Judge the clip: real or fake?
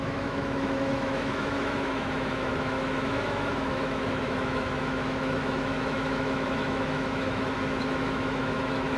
fake